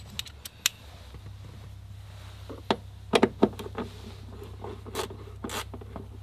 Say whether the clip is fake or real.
real